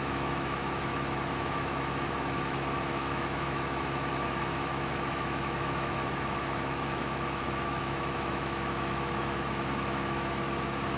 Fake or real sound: fake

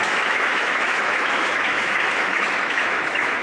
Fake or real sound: fake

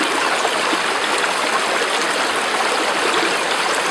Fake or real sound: real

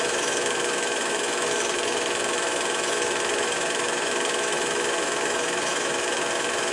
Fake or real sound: fake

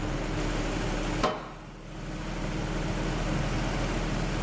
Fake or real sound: real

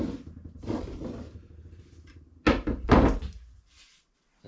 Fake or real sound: real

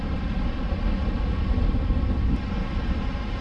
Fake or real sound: real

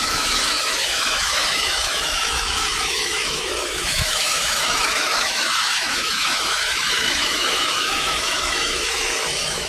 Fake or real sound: fake